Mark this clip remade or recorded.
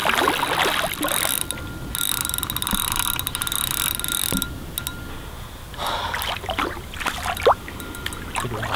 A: recorded